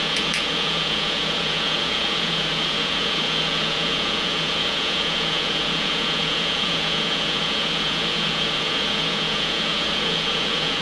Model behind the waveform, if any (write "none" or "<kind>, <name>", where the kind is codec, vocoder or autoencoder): vocoder, Vocos